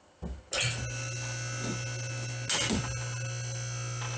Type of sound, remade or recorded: recorded